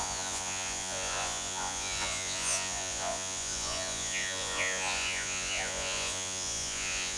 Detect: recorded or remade remade